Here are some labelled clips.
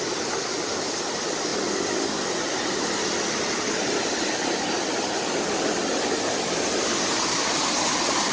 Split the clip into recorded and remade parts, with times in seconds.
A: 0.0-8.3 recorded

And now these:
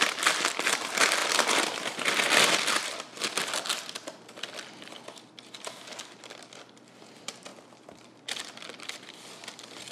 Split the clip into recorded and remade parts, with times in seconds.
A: 0.0-1.2 recorded; 1.2-3.2 remade; 3.2-9.9 recorded

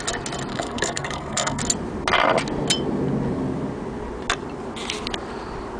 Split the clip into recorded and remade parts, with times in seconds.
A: 0.0-0.5 recorded; 0.5-1.6 remade; 1.6-5.8 recorded

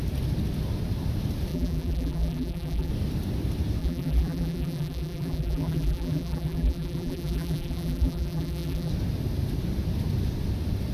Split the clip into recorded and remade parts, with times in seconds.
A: 0.0-1.5 recorded; 1.5-2.9 remade; 2.9-3.8 recorded; 3.8-8.9 remade; 8.9-10.9 recorded

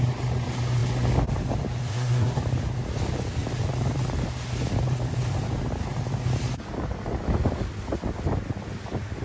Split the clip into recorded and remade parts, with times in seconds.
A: 0.0-1.9 recorded; 1.9-2.4 remade; 2.4-9.2 recorded